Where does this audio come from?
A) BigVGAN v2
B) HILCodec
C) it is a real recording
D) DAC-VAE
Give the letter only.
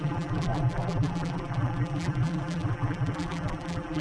A